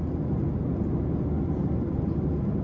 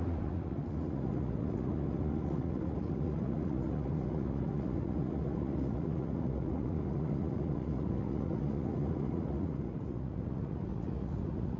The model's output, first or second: second